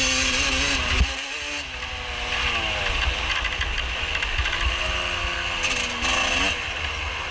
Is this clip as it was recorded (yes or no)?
yes